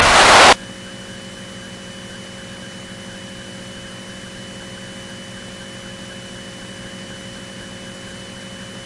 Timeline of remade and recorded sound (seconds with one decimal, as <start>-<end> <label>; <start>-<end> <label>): 0.0-8.9 recorded